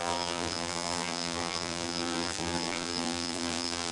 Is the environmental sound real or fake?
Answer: fake